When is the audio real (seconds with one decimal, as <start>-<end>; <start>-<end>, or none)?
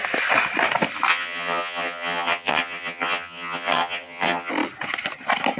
0.0-1.1; 4.5-5.6